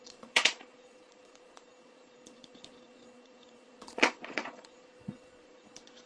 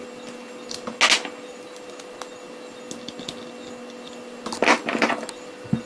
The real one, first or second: second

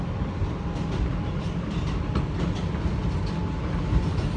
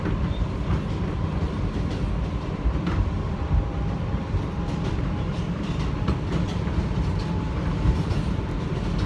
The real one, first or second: first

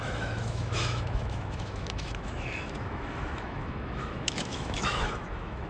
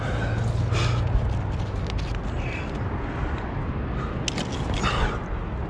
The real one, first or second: second